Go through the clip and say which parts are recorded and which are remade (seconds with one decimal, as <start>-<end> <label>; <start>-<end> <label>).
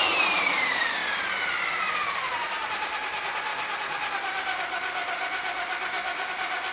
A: 0.0-1.0 remade; 1.0-2.0 recorded; 2.0-3.5 remade; 3.5-6.3 recorded; 6.3-6.7 remade